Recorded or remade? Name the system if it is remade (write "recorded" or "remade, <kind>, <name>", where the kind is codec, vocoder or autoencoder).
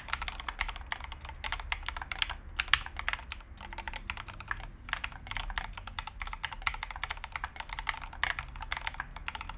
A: recorded